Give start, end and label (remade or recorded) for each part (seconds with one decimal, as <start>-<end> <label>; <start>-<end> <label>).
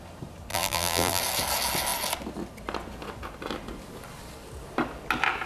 0.0-0.5 recorded; 0.5-1.2 remade; 1.2-5.5 recorded